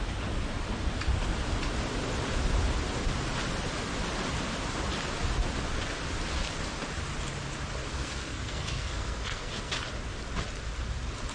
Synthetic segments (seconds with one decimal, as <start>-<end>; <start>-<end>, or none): 7.9-9.7